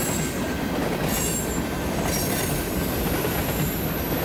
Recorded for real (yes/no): yes